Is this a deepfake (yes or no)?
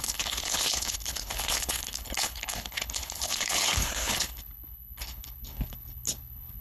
yes